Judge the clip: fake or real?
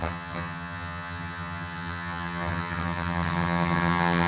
fake